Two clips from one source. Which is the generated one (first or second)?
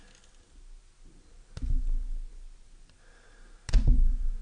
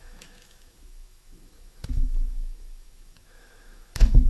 second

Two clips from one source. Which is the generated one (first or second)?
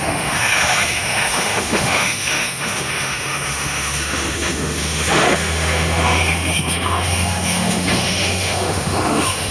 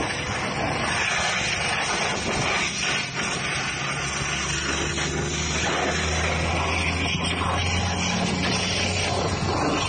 first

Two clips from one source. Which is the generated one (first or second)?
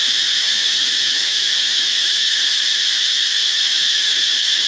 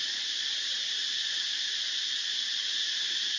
first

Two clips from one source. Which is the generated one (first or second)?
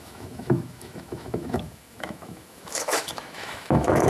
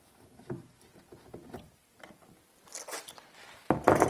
first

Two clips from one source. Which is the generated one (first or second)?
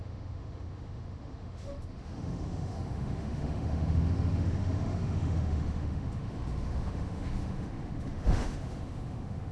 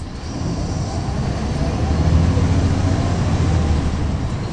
first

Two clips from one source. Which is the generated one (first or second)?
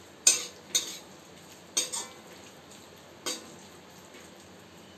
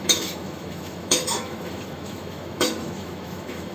second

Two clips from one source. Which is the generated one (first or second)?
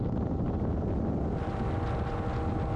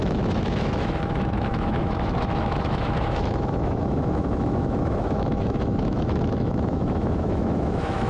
second